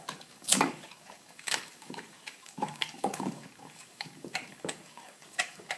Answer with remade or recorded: remade